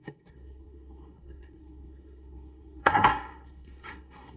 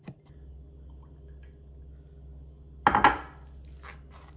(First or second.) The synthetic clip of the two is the first